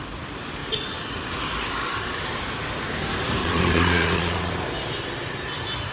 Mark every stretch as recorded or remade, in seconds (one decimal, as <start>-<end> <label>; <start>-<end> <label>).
0.0-3.4 recorded; 3.4-4.5 remade; 4.5-5.9 recorded